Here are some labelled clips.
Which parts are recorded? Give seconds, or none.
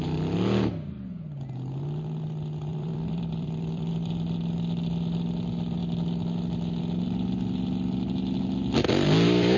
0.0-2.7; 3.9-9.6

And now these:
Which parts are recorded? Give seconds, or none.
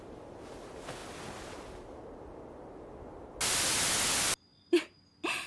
0.0-5.5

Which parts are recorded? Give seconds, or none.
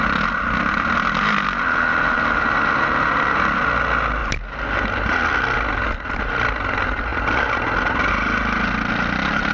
0.0-9.5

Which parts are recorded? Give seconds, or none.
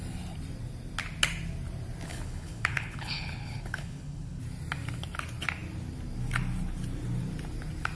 0.0-2.1; 4.4-7.9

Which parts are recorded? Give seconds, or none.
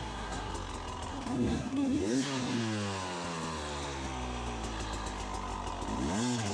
0.5-1.1; 2.6-6.5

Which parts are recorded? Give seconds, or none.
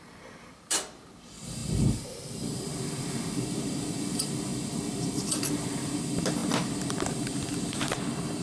4.5-5.0; 6.4-7.4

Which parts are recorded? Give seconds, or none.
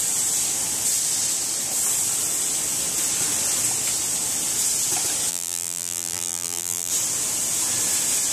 0.0-5.3; 6.9-8.3